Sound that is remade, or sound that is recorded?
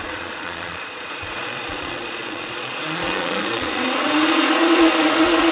remade